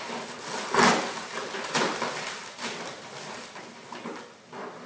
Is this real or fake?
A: real